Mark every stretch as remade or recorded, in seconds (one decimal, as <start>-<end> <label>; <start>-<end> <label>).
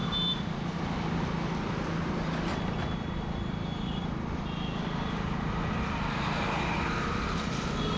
0.0-8.0 recorded